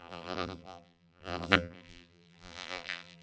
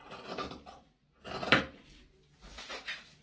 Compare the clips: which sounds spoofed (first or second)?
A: first